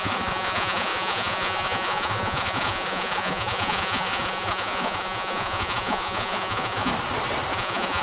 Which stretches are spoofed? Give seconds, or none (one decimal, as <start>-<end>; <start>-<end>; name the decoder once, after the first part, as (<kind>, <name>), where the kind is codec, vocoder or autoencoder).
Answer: 0.0-6.9 (vocoder, Vocos); 7.5-8.0